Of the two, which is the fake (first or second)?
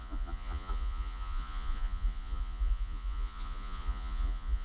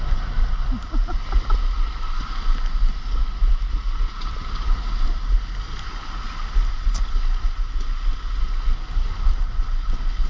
first